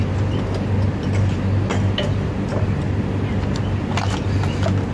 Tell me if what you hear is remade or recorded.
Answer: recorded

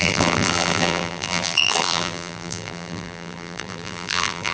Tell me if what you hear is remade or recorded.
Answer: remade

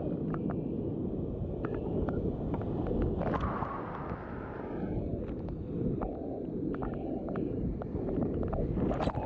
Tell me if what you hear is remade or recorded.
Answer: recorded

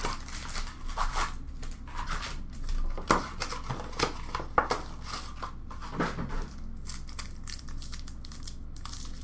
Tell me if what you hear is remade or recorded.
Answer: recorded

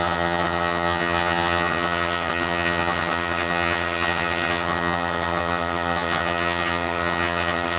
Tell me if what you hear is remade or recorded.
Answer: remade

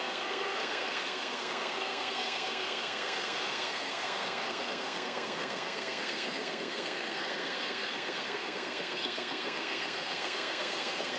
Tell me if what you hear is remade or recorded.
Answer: remade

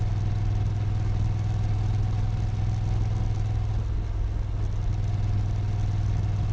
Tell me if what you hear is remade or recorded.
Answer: recorded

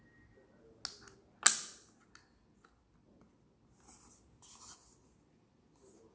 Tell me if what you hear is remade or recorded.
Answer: recorded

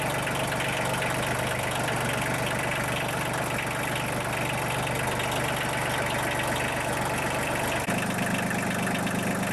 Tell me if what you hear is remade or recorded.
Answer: recorded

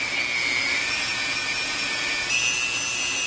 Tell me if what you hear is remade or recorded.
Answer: recorded